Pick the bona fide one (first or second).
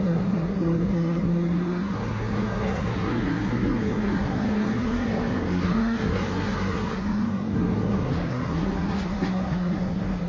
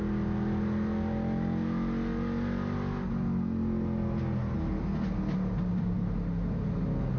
second